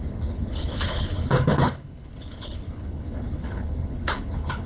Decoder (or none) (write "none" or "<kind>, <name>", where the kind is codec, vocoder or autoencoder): codec, HILCodec